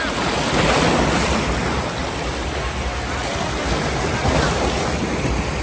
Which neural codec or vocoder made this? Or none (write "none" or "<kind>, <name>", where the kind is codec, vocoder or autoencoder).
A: none